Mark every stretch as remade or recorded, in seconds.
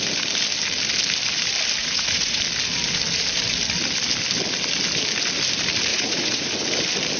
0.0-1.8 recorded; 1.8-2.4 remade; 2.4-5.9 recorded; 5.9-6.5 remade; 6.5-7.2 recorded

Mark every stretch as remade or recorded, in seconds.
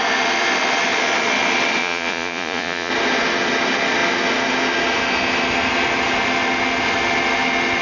0.0-1.8 recorded; 1.8-2.9 remade; 2.9-7.8 recorded